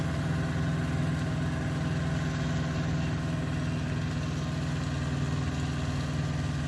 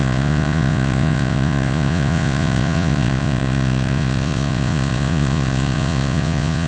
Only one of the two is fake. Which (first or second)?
second